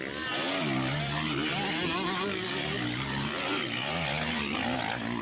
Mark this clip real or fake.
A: real